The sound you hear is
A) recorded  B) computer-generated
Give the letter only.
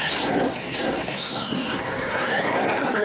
B